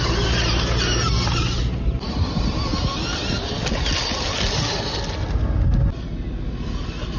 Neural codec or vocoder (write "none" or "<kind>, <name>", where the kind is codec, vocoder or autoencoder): none